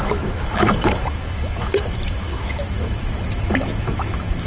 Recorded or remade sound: remade